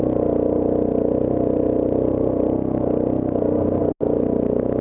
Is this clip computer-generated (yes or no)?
no